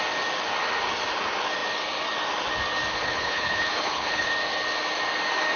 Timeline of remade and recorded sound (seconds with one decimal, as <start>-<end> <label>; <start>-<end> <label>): 0.0-2.9 recorded; 2.9-4.3 remade; 4.3-5.6 recorded